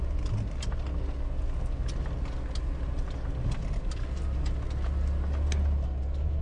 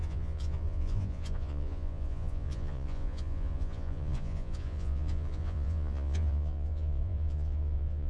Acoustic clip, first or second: first